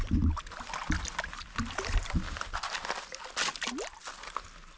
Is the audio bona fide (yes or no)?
yes